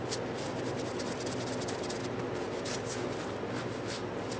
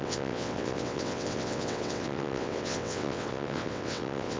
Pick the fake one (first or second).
second